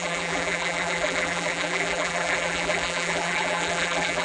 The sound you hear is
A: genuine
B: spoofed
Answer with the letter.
B